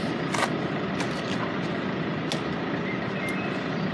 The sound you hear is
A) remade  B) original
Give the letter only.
B